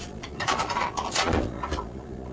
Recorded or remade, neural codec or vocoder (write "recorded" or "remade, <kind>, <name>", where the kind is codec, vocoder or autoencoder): remade, vocoder, Vocos